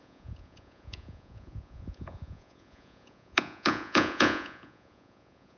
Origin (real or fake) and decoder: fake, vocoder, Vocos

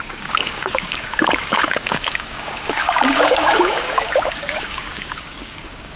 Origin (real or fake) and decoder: fake, codec, DAC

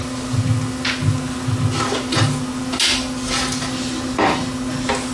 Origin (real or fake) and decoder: real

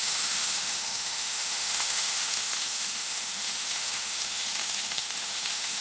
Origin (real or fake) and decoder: fake, autoencoder, DAC-VAE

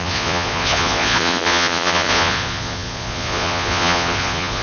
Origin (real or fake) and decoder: fake, vocoder, Vocos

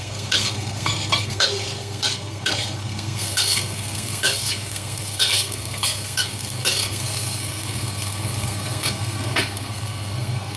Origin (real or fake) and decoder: fake, codec, SNAC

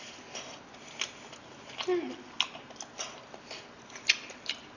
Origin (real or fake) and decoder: real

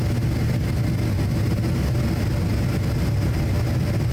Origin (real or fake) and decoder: real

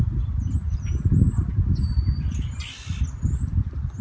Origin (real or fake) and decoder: real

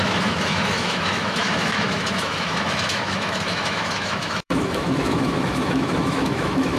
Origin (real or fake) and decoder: fake, autoencoder, DAC-VAE